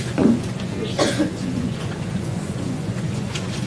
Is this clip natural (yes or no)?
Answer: no